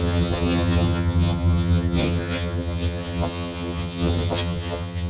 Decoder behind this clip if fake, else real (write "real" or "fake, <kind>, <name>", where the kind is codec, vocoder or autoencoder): fake, vocoder, HiFi-GAN